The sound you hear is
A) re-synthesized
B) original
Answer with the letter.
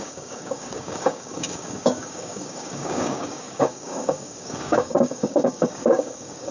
A